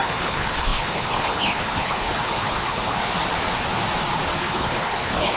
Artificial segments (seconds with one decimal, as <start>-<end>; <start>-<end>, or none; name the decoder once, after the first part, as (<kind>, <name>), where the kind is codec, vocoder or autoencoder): 0.0-3.0 (codec, HILCodec); 4.4-5.4